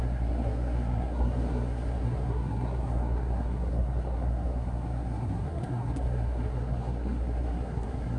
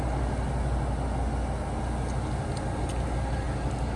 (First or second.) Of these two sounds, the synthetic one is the first